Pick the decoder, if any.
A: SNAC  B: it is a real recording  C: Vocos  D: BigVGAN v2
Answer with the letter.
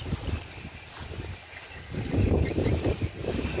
B